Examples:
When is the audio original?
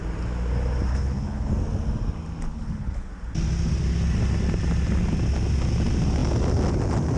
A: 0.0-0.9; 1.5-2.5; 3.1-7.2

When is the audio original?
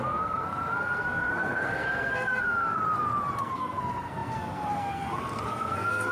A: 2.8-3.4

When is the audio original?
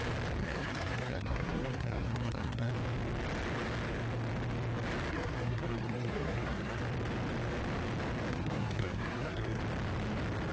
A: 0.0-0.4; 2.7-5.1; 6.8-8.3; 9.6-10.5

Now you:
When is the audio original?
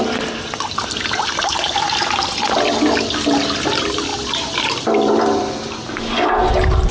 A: 0.0-6.9